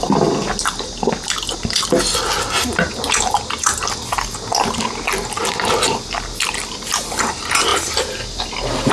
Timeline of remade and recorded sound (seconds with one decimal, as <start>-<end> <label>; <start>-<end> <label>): 0.0-8.9 recorded